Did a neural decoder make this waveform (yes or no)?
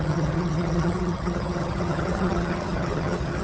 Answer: yes